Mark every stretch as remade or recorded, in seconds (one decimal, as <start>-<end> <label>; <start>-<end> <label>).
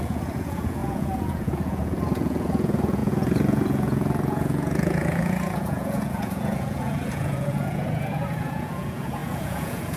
0.0-10.0 remade